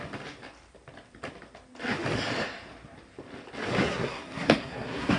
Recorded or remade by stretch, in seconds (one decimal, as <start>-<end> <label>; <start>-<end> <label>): 0.0-3.7 recorded; 3.7-5.2 remade